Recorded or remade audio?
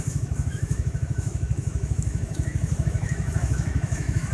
remade